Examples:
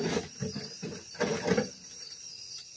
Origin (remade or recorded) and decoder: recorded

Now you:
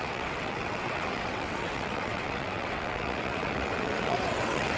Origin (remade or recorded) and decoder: remade, vocoder, WaveNeXt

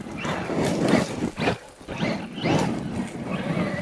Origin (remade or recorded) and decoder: recorded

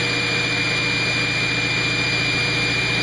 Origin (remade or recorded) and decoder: recorded